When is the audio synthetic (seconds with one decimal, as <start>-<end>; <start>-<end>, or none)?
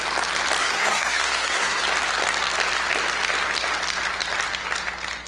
0.6-1.8